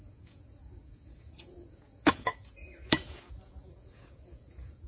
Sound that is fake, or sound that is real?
fake